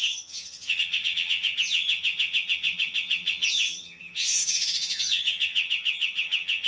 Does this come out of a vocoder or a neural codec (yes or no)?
yes